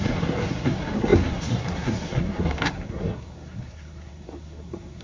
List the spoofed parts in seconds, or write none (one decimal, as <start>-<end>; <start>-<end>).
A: 0.0-5.0